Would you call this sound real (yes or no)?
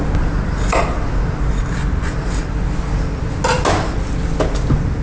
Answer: yes